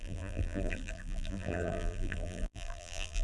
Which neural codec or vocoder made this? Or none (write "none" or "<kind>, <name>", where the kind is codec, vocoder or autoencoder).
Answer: vocoder, BigVGAN v2